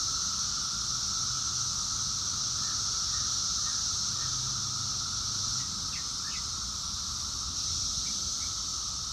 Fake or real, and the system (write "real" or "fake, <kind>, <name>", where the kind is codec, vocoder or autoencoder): real